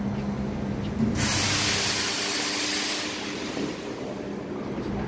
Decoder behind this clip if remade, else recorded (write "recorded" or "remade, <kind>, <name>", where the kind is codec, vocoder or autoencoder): recorded